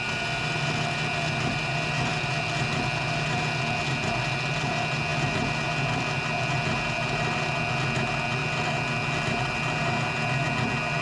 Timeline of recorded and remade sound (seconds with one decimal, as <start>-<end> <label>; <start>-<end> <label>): 0.0-11.0 recorded